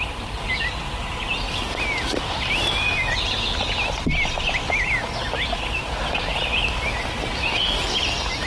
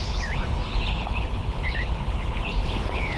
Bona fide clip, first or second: first